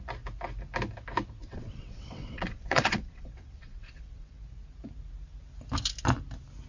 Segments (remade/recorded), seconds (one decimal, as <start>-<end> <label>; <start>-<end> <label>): 0.0-1.4 recorded; 1.4-4.4 remade; 4.4-6.7 recorded